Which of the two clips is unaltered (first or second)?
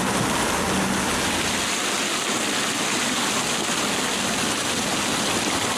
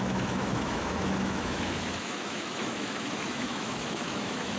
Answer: first